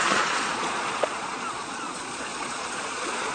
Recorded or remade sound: remade